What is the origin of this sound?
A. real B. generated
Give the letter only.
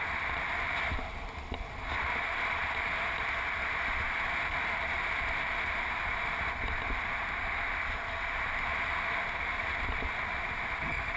A